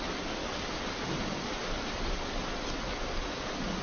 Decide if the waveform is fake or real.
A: real